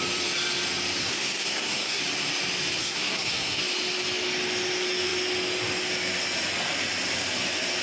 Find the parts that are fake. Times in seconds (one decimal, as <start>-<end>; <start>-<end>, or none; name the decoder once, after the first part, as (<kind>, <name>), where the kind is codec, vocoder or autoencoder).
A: 1.0-2.0 (codec, SNAC); 2.8-3.6